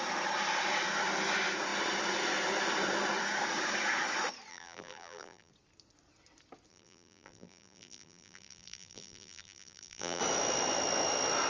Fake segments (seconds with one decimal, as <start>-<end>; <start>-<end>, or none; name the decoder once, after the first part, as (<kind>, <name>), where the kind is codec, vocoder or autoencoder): 4.5-5.5 (vocoder, BigVGAN v2); 6.7-10.2